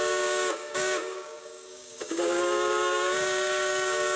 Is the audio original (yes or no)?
no